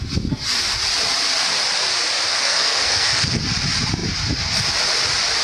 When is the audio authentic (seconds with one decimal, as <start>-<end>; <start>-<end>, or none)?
0.0-2.3; 3.4-5.4